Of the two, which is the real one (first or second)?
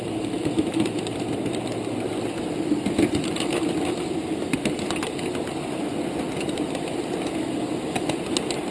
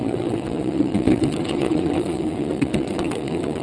first